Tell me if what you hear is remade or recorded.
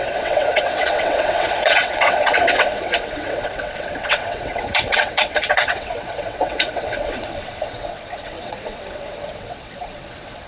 remade